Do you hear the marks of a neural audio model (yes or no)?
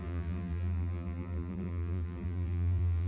yes